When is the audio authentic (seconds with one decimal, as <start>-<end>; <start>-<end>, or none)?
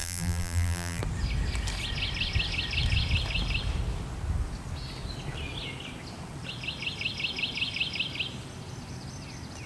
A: 1.0-9.7